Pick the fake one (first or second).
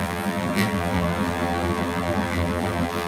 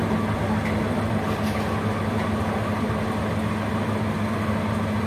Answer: first